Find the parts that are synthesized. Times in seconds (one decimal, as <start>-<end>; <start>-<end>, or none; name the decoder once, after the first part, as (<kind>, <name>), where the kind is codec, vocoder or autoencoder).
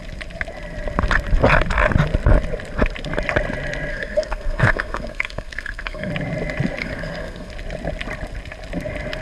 3.9-6.1 (codec, SNAC); 6.8-7.5